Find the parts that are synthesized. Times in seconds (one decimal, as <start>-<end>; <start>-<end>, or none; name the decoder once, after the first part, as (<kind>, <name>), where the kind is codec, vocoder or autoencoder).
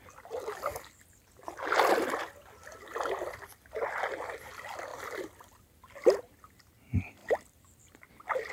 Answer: 7.2-8.0 (vocoder, BigVGAN v2)